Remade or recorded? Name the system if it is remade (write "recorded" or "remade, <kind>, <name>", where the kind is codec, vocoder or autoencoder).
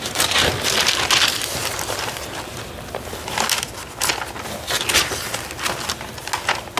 recorded